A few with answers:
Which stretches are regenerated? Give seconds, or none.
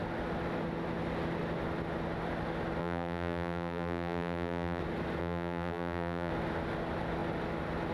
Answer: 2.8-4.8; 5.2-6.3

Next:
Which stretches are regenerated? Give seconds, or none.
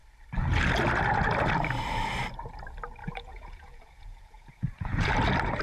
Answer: 3.0-5.1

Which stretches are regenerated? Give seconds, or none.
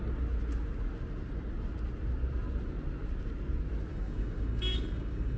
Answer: 3.9-5.4